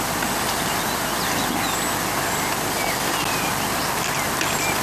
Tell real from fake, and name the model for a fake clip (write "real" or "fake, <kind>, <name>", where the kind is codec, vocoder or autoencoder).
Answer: real